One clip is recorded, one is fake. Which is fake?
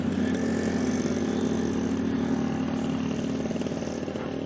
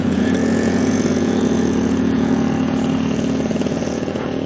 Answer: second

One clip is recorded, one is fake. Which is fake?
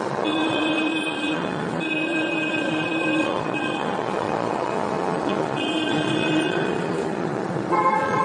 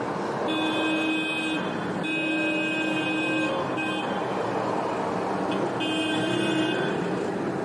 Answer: first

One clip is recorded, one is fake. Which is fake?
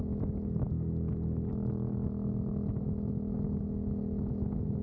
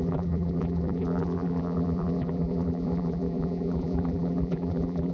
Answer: second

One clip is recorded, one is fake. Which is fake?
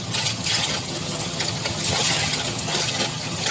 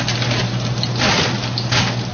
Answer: first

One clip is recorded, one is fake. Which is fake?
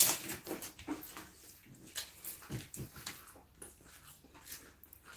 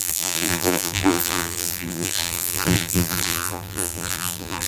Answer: second